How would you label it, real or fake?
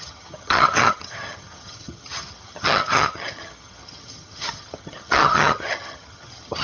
fake